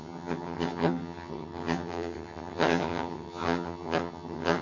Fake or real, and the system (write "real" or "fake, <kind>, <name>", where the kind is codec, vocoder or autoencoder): fake, vocoder, HiFi-GAN